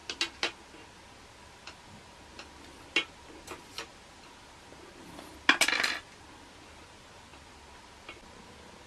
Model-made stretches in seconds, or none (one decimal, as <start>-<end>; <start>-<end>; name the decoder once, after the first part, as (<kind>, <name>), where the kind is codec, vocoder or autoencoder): none